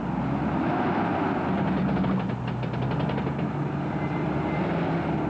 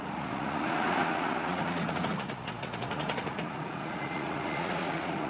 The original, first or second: first